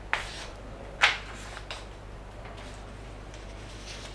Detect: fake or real real